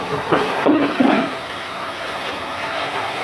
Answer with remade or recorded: remade